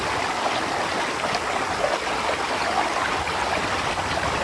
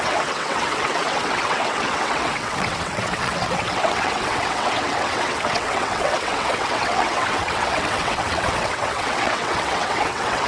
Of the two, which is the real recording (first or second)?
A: first